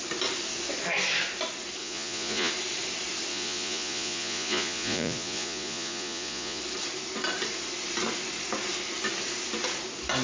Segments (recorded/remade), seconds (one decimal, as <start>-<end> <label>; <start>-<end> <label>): 0.0-1.8 recorded; 1.8-2.5 remade; 2.5-3.3 recorded; 3.3-6.6 remade; 6.6-10.2 recorded